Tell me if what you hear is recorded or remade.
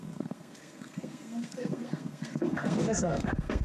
remade